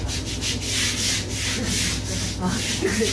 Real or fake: real